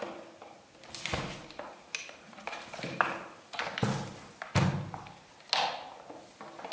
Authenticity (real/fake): real